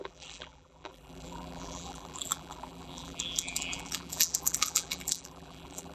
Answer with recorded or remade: remade